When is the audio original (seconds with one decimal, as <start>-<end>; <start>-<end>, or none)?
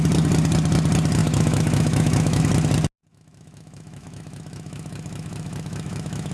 0.0-1.2; 2.4-3.1